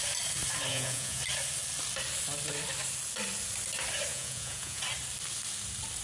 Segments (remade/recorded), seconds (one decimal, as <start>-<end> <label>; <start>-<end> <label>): 0.0-0.7 recorded; 0.7-1.2 remade; 1.2-4.1 recorded; 4.1-4.8 remade; 4.8-6.0 recorded